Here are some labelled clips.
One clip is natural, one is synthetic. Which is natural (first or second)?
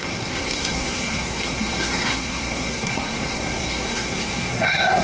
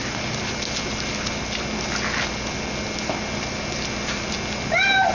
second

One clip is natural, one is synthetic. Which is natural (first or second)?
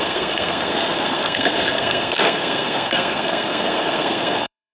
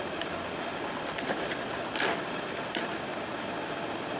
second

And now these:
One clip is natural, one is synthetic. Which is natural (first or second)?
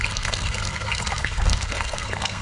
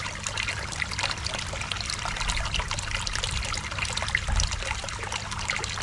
second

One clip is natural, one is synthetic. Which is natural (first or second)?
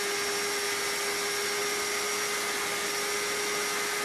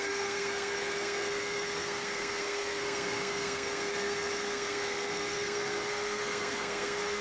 first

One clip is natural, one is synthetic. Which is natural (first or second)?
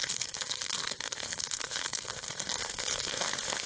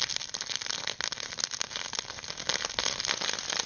second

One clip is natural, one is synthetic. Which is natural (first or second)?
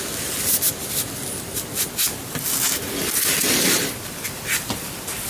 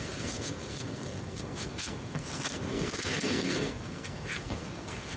first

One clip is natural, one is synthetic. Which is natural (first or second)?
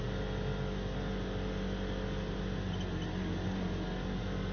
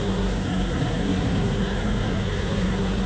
first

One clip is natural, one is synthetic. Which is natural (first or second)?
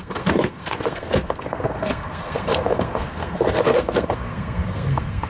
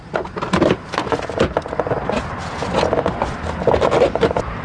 second